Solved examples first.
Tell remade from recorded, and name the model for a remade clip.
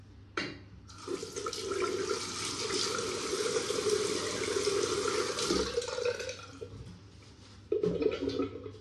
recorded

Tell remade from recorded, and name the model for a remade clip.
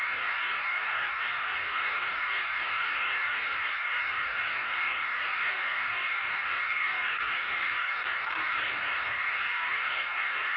remade, codec, DAC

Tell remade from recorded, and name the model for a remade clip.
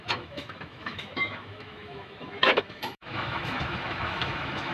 remade, autoencoder, DAC-VAE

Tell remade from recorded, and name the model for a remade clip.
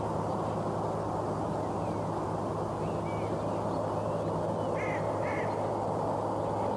recorded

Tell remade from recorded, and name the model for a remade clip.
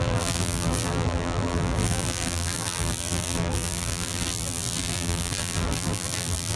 remade, vocoder, BigVGAN v2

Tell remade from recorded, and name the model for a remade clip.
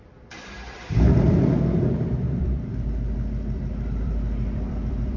remade, vocoder, BigVGAN v2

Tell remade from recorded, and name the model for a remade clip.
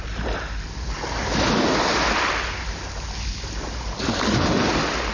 recorded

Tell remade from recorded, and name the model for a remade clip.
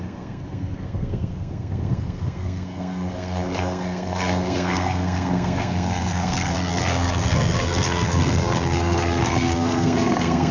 remade, codec, SNAC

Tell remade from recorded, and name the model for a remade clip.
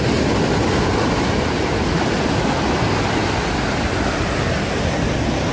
recorded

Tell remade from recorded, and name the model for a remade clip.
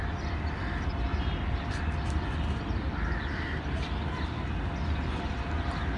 remade, vocoder, BigVGAN v2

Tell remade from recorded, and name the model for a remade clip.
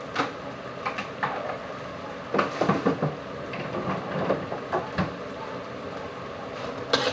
recorded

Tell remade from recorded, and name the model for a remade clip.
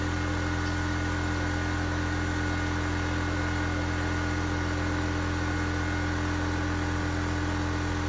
recorded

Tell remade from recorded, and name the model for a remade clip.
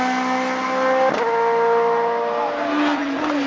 recorded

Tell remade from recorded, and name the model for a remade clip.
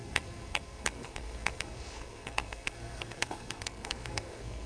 remade, codec, SNAC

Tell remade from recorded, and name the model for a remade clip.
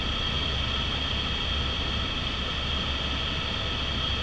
recorded